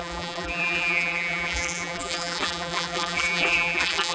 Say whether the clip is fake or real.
fake